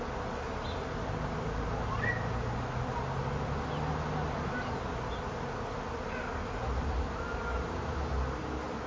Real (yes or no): yes